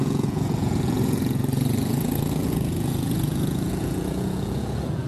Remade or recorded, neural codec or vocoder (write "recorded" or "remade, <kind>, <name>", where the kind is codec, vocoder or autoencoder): remade, vocoder, Vocos